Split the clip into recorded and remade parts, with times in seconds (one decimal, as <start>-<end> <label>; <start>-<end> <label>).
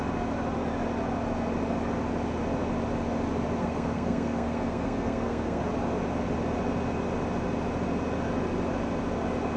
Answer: 0.0-3.6 recorded; 3.6-5.6 remade; 5.6-9.6 recorded